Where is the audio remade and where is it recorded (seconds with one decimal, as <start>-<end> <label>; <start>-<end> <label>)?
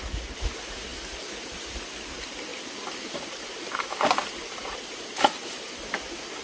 0.0-6.4 recorded